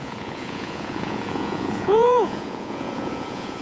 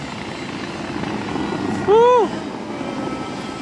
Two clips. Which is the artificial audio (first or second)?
first